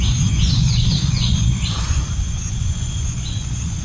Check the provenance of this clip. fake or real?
fake